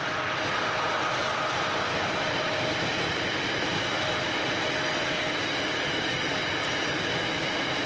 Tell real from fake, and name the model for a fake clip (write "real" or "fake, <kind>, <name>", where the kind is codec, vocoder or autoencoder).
real